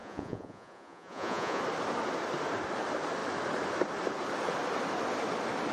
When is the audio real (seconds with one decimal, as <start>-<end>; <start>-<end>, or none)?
1.6-5.7